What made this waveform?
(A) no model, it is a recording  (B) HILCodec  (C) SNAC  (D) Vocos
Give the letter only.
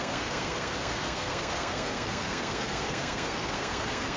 C